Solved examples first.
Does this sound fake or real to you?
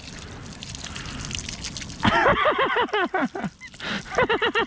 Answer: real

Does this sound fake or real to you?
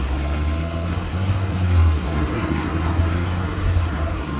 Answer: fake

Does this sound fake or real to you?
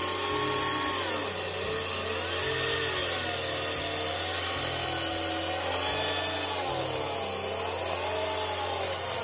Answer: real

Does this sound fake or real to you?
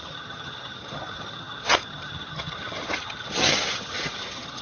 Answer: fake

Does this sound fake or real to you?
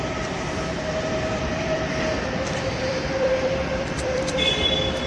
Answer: fake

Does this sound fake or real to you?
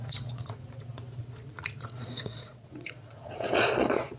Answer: fake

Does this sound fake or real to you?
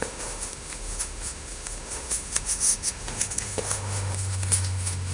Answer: fake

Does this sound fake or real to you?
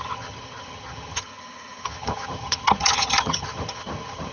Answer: fake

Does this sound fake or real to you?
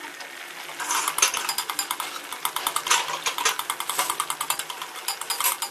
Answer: real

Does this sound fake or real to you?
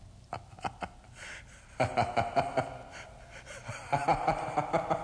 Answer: real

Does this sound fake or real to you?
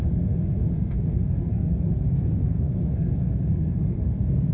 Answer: fake